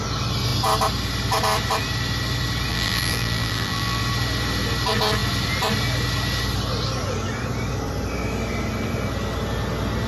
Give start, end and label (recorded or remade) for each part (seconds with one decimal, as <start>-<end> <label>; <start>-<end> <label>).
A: 0.0-2.7 recorded; 2.7-4.0 remade; 4.0-10.1 recorded